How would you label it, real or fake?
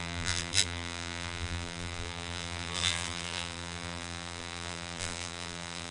fake